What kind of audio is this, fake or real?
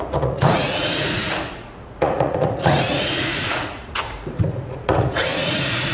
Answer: fake